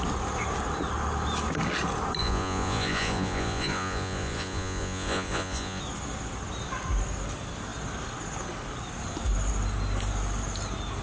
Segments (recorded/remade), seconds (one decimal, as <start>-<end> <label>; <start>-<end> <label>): 0.0-2.2 recorded; 2.2-5.8 remade; 5.8-11.0 recorded